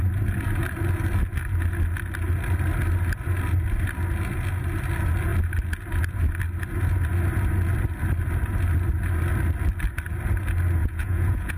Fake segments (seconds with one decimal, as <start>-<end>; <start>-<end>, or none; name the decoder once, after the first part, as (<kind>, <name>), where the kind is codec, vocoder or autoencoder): 10.8-11.6 (vocoder, Vocos)